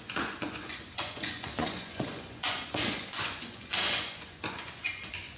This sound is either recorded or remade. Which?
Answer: remade